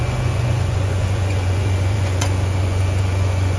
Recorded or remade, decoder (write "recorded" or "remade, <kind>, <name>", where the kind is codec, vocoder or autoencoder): remade, vocoder, Vocos